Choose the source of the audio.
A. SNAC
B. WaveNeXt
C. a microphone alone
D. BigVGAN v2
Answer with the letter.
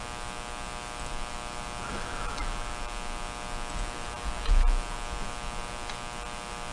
C